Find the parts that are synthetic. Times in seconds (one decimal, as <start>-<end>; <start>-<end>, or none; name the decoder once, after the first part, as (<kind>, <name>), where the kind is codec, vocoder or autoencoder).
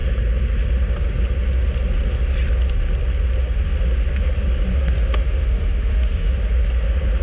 4.7-6.3 (autoencoder, DAC-VAE)